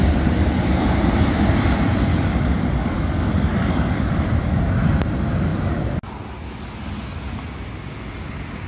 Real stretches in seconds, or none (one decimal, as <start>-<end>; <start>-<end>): 0.0-2.1; 4.1-8.7